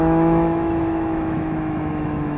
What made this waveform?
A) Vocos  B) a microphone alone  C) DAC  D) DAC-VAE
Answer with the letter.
D